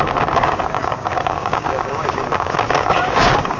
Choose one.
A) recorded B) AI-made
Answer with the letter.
B